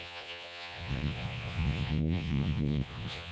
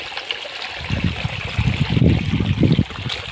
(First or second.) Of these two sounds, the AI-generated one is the first